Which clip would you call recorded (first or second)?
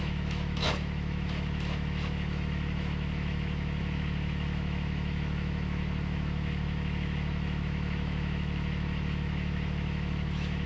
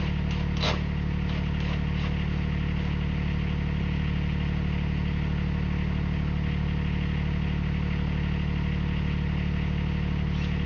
second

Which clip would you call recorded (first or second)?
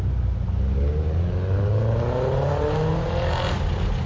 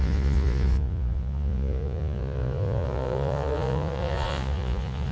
first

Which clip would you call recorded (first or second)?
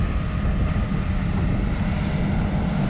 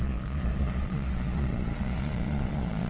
first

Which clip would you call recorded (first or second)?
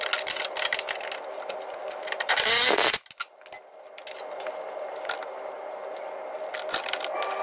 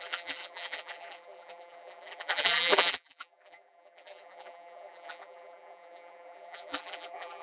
first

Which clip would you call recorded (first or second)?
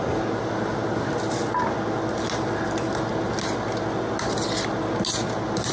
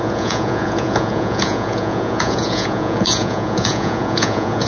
first